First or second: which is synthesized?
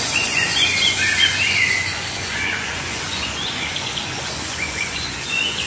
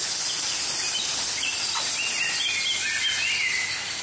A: first